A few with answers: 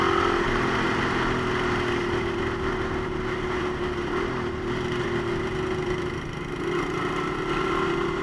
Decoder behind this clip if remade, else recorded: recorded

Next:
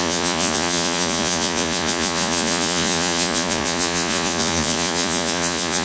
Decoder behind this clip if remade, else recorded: remade, vocoder, Vocos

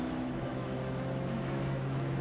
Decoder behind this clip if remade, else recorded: remade, autoencoder, DAC-VAE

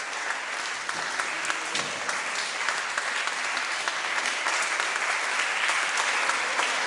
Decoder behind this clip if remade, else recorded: recorded